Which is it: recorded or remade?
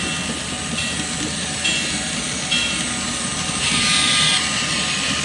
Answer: recorded